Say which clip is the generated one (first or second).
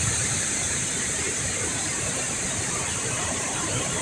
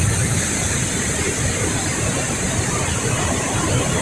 first